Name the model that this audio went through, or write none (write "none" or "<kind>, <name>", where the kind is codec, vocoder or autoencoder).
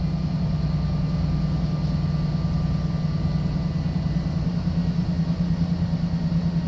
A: none